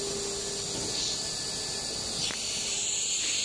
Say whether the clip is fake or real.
real